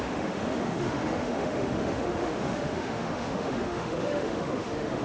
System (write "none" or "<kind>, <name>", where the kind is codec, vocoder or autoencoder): autoencoder, DAC-VAE